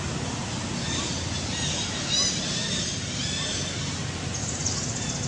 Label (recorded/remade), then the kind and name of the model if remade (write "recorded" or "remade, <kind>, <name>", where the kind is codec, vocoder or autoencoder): recorded